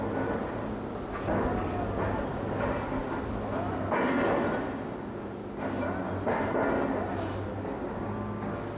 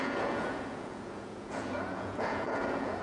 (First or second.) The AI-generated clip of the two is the second